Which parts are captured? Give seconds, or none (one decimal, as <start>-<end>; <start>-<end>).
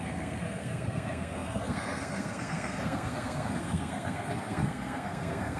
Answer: none